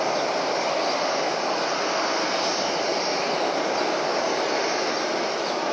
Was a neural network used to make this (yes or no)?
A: no